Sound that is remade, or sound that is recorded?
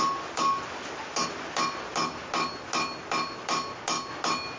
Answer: recorded